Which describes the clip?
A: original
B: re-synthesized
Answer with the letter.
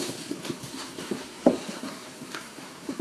B